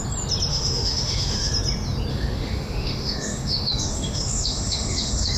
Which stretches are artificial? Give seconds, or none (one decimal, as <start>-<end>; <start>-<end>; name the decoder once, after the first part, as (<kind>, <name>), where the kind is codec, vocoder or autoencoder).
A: 0.5-1.5 (autoencoder, DAC-VAE); 2.1-5.4